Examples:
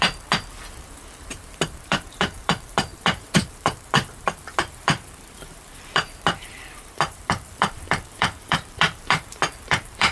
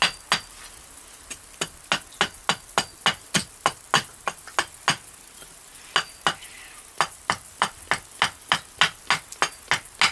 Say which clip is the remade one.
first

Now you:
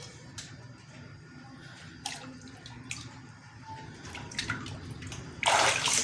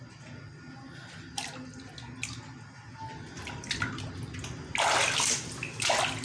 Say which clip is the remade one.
first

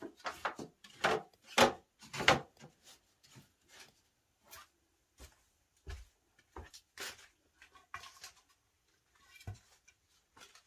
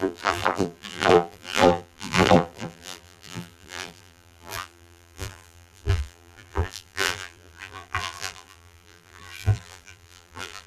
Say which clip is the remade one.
second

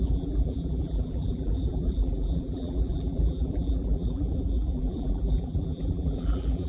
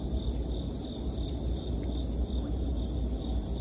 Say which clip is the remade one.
first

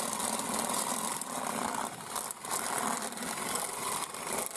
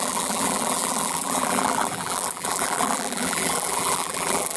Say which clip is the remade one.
second